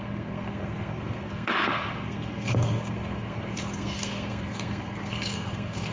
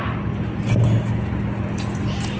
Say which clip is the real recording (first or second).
second